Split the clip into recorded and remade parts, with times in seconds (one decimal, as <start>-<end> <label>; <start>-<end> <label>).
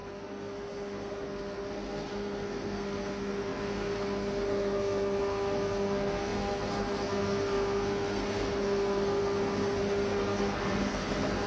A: 0.0-11.5 remade